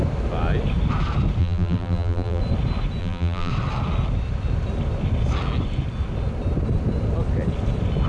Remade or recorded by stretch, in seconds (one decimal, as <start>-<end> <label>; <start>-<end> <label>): 0.0-1.4 recorded; 1.4-2.4 remade; 2.4-3.0 recorded; 3.0-3.5 remade; 3.5-8.1 recorded